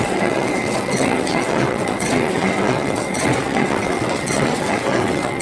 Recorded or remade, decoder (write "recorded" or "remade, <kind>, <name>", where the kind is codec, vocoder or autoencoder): remade, vocoder, WaveNeXt